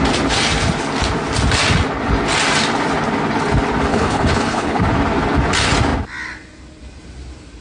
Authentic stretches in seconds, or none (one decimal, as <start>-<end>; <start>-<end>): 0.0-3.9; 4.8-7.6